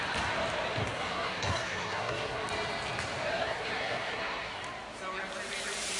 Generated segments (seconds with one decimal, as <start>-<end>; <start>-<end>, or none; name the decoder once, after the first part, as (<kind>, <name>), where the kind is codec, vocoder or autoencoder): 0.8-2.4 (codec, SNAC); 3.3-4.6